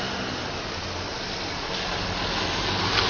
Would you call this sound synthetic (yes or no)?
no